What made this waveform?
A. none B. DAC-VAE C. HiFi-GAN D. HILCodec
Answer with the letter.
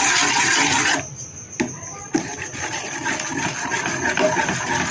A